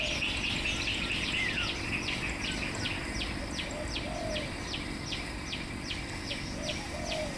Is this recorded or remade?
remade